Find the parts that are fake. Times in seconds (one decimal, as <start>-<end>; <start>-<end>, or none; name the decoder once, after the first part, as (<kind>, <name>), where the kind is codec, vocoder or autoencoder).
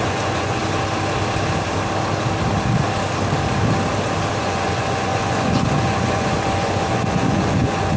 0.0-0.6 (vocoder, Vocos); 4.4-8.0